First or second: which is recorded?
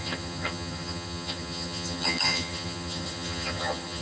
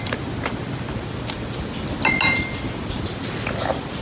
second